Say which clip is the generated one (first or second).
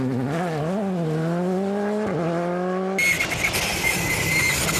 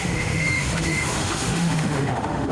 second